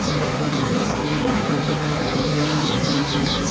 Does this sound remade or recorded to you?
remade